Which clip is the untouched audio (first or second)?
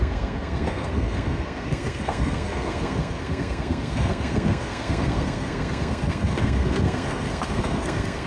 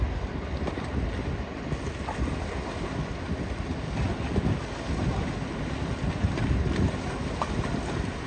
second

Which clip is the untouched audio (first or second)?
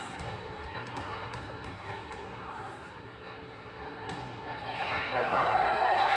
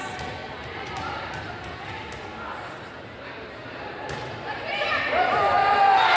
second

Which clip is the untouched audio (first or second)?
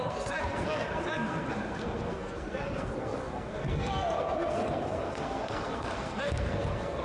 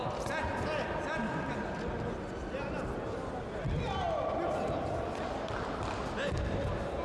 second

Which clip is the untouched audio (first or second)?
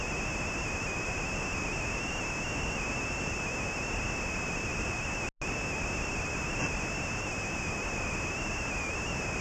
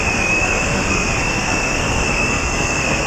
first